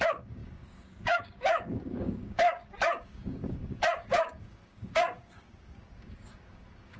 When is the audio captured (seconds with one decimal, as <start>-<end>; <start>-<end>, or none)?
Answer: none